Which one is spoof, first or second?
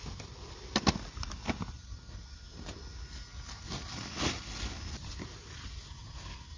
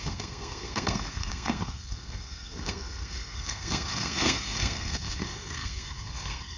second